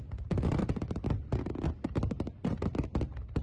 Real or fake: real